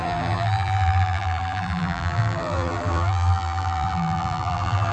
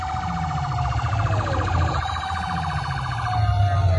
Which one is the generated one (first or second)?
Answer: first